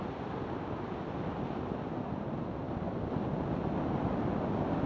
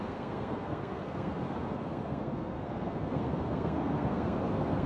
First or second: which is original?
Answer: first